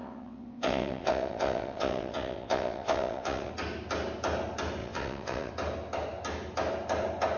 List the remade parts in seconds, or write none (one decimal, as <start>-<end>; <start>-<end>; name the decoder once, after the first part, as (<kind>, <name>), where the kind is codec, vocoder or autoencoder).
0.0-3.5 (vocoder, WaveNeXt); 4.8-5.5